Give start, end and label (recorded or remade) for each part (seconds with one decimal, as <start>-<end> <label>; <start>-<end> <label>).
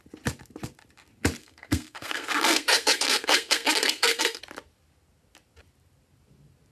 0.0-1.4 recorded; 1.4-4.4 remade; 4.4-6.7 recorded